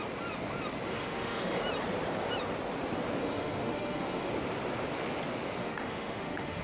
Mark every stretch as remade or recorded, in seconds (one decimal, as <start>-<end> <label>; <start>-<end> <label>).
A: 0.0-0.9 recorded; 0.9-1.6 remade; 1.6-3.2 recorded; 3.2-4.3 remade; 4.3-5.6 recorded; 5.6-6.6 remade